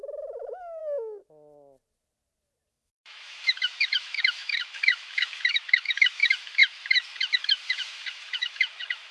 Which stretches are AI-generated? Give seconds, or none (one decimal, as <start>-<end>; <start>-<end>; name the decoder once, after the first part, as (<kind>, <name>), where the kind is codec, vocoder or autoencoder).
0.0-0.8 (autoencoder, DAC-VAE); 2.7-9.1